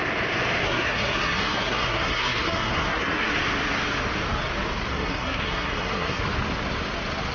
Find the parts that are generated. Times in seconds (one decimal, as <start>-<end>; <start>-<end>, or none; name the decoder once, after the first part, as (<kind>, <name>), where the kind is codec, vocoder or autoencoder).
0.6-3.3 (codec, SNAC); 4.9-6.2

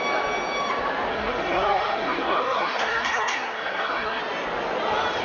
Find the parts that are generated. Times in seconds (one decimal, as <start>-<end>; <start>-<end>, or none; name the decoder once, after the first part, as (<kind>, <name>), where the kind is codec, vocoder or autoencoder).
1.1-4.2 (codec, SNAC)

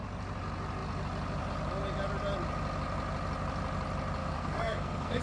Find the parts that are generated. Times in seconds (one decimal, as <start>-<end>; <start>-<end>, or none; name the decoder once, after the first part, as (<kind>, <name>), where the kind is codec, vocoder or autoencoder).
4.2-5.2 (codec, SNAC)

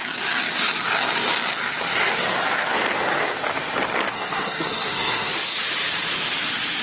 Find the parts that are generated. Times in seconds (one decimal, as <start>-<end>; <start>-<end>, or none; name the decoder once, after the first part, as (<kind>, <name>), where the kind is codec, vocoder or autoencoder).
4.1-5.3 (codec, SNAC)

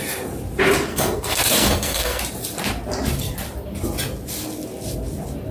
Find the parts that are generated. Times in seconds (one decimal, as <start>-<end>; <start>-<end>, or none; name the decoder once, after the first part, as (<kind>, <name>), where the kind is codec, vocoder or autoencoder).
0.9-2.2 (codec, SNAC)